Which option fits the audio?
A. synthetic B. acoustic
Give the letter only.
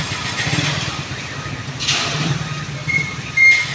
A